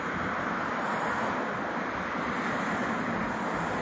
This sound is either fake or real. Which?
real